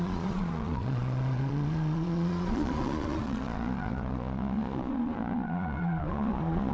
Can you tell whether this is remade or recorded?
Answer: remade